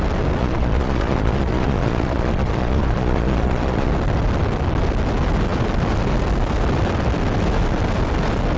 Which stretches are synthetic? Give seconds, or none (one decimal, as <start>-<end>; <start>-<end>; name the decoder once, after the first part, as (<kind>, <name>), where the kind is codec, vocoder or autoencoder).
0.4-3.9 (vocoder, Vocos)